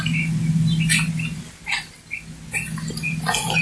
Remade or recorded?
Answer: recorded